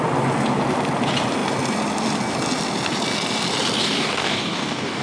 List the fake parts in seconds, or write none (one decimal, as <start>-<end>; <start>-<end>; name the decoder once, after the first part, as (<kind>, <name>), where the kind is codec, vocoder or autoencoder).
3.8-5.0 (codec, DAC)